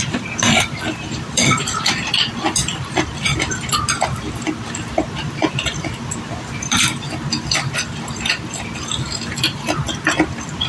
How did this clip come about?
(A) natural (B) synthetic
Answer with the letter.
B